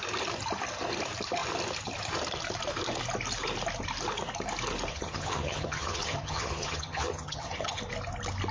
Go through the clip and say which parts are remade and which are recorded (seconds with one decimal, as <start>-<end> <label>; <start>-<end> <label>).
0.0-4.9 recorded; 4.9-7.8 remade; 7.8-8.5 recorded